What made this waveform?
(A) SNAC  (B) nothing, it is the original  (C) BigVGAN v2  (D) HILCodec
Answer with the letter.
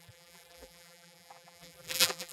C